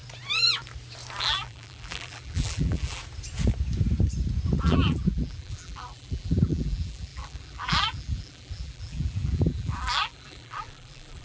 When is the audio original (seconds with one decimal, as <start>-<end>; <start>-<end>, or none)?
0.0-1.2; 3.0-4.6